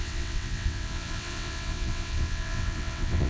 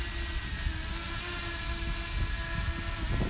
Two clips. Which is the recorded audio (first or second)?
second